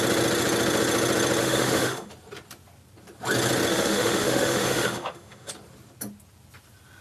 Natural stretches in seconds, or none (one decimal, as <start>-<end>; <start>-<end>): 0.0-1.4; 2.1-3.7; 5.5-7.0